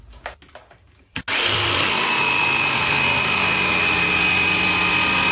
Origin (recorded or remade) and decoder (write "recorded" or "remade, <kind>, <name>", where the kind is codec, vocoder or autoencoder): recorded